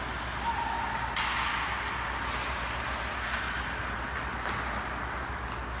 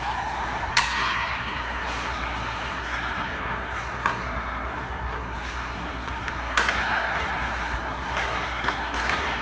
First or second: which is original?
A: first